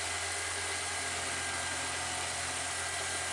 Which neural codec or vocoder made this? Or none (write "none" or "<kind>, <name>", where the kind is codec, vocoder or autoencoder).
none